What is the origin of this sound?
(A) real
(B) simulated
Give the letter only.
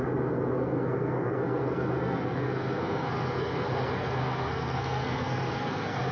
B